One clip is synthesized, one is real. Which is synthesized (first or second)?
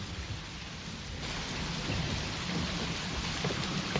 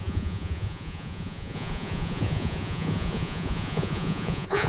second